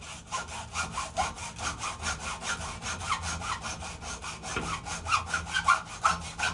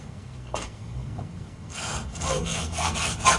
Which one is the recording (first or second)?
first